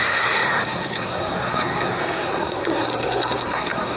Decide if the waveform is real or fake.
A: fake